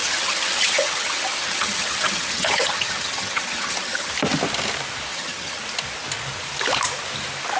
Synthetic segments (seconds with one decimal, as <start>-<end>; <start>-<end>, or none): 0.0-4.1; 5.1-5.6